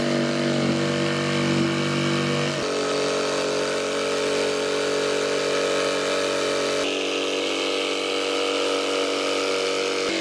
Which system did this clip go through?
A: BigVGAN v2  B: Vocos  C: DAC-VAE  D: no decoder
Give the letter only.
D